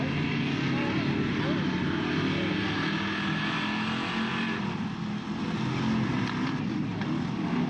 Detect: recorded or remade recorded